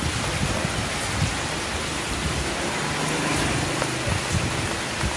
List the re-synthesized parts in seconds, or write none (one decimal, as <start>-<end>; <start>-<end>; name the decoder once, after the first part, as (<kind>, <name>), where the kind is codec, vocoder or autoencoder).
none